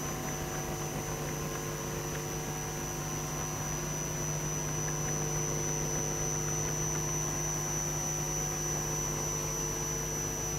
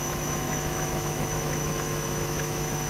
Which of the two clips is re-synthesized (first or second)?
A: second